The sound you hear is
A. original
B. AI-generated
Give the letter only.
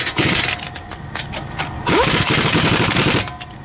A